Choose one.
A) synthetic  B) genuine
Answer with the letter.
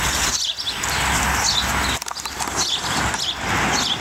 B